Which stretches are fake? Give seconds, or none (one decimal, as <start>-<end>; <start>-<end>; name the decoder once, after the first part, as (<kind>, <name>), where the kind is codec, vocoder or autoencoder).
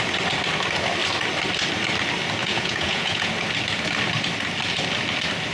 2.4-3.3 (vocoder, Vocos)